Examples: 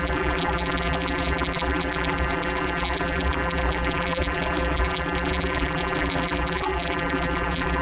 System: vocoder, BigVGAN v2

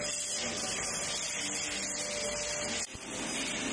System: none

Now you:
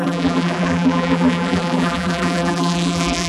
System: vocoder, BigVGAN v2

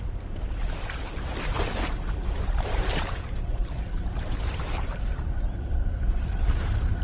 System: vocoder, BigVGAN v2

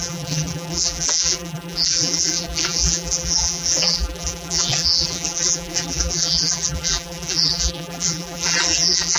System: vocoder, BigVGAN v2